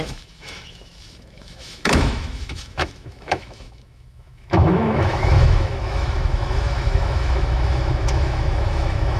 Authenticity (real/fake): fake